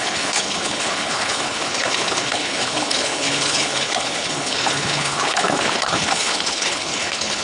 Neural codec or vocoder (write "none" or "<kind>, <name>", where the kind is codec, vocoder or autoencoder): codec, HILCodec